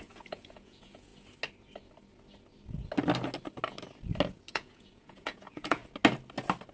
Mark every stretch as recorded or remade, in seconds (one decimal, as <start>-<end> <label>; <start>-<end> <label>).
0.0-1.1 remade; 1.1-4.5 recorded; 4.5-5.8 remade; 5.8-6.7 recorded